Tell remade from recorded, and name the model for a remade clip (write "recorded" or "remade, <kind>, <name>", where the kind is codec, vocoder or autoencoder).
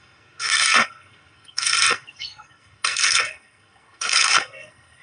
remade, codec, SNAC